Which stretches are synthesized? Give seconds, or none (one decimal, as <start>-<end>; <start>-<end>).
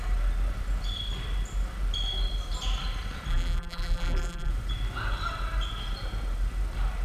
3.3-4.5